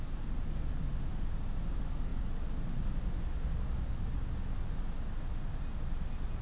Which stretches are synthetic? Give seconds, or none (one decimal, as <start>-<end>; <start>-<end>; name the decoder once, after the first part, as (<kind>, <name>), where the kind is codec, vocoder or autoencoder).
none